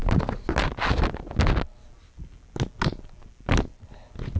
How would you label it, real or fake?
real